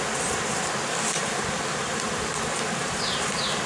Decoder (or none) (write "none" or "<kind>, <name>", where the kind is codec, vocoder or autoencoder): none